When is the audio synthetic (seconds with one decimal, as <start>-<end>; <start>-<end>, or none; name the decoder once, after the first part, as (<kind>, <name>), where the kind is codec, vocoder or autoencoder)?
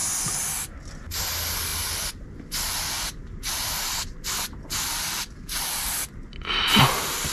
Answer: 1.7-5.9 (vocoder, BigVGAN v2)